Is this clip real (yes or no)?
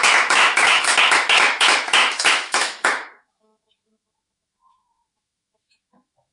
no